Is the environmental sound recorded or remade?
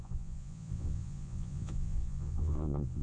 remade